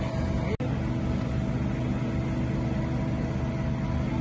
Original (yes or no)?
yes